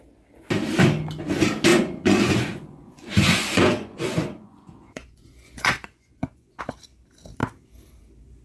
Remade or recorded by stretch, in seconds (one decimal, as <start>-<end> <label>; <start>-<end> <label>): 0.0-1.7 recorded; 1.7-6.6 remade; 6.6-8.4 recorded